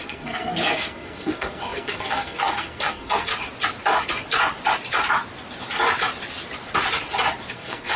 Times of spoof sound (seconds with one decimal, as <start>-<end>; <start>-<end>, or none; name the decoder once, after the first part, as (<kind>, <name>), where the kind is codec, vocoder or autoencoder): 0.0-3.3 (codec, SNAC); 7.5-8.0